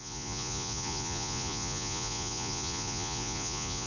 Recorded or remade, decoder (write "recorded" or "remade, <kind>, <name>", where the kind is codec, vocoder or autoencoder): remade, vocoder, Vocos